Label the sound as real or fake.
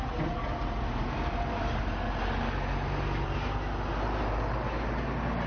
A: real